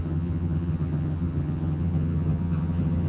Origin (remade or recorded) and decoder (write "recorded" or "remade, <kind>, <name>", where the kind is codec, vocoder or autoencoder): remade, vocoder, HiFi-GAN